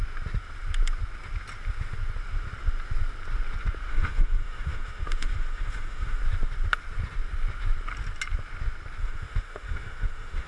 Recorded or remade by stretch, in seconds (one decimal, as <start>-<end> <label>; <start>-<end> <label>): 0.0-3.9 recorded; 3.9-6.2 remade; 6.2-9.0 recorded; 9.0-10.5 remade